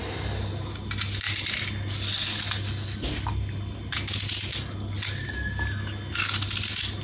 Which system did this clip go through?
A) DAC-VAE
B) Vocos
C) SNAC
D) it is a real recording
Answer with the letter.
D